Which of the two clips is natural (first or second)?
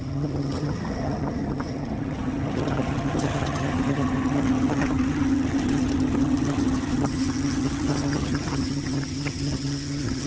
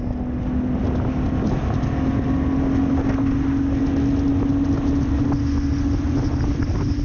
second